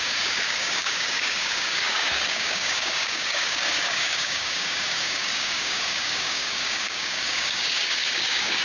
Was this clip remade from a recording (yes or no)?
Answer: yes